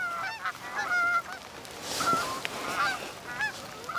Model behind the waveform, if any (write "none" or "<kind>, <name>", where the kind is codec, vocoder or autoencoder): none